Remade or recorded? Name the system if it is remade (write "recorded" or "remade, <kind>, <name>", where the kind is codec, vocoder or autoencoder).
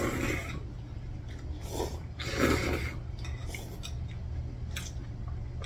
recorded